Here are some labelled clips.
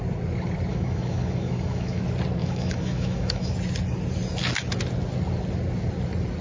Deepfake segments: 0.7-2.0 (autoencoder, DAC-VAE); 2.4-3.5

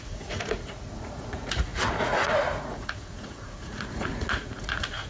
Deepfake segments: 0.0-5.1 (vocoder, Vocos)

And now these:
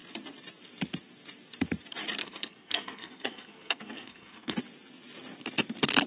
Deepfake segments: 2.2-4.5 (codec, SNAC)